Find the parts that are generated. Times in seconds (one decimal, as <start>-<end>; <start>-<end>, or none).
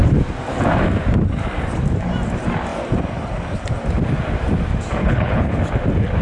5.0-5.6